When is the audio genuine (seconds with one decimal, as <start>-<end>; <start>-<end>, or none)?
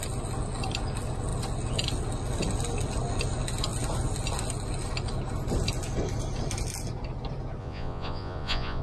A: 0.0-7.6